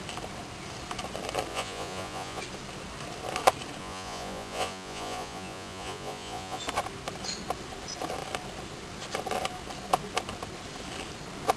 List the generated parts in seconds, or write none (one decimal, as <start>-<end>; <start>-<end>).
1.5-2.4; 3.8-6.6

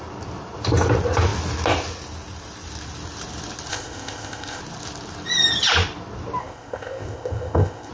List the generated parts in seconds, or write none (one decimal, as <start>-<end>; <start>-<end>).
3.7-4.6; 6.4-7.9

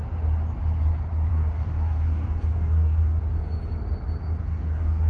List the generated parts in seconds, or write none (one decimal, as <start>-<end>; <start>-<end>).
1.3-3.2; 4.4-5.1